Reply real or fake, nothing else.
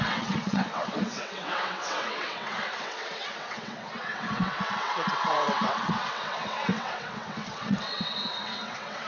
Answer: fake